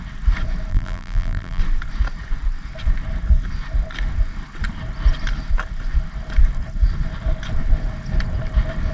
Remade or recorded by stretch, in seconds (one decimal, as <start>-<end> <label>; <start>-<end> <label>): 0.0-0.7 recorded; 0.7-1.6 remade; 1.6-8.9 recorded